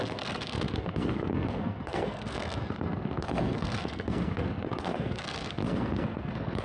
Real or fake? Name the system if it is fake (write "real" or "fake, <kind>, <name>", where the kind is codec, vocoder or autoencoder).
fake, codec, SNAC